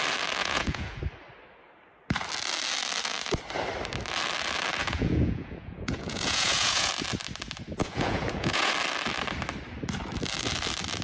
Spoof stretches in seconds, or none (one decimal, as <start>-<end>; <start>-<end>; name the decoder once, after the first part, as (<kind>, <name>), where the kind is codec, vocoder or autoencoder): 0.4-1.0 (vocoder, Vocos); 4.8-6.9; 7.8-8.7